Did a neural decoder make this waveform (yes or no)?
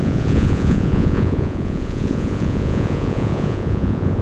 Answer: yes